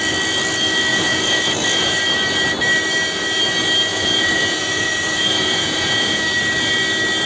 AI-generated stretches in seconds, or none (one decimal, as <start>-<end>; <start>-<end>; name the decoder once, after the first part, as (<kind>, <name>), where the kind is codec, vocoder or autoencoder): 0.9-2.0 (vocoder, Vocos); 3.9-6.2